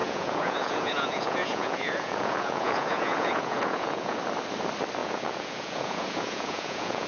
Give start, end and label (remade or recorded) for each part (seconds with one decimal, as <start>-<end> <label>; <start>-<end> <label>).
0.0-4.2 remade; 4.2-5.0 recorded; 5.0-7.1 remade